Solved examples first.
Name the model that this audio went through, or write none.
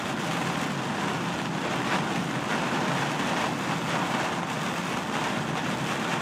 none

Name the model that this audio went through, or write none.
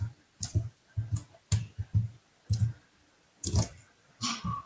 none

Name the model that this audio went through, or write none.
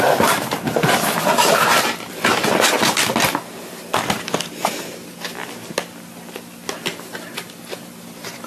none